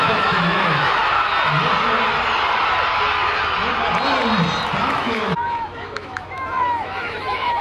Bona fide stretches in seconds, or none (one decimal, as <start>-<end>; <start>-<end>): 1.0-4.8